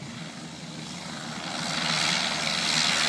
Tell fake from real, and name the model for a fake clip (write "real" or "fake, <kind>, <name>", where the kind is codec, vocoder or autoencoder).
real